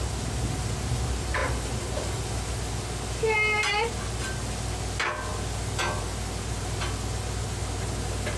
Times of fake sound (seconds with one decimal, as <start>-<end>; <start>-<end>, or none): none